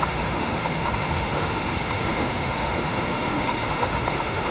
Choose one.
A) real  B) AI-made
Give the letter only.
B